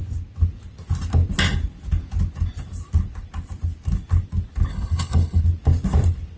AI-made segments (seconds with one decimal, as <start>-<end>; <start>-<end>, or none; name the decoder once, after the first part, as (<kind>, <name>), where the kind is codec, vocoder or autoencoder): 4.7-5.4 (codec, HILCodec)